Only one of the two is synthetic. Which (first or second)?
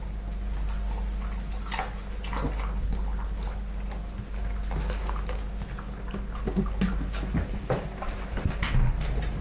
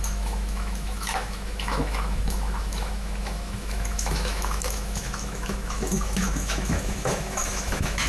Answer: second